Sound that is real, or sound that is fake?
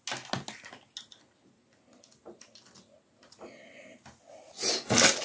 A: real